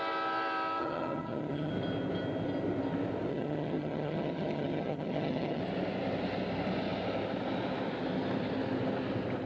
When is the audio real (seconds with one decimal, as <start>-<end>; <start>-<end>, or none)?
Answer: 0.0-0.8; 1.7-3.3; 5.6-9.5